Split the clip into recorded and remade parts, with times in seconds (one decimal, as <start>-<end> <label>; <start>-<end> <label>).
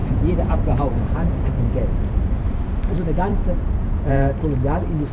0.0-1.5 remade; 1.5-3.3 recorded; 3.3-4.3 remade; 4.3-5.1 recorded